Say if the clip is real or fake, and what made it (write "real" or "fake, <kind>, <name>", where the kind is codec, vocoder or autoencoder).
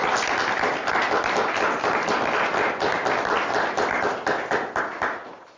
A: real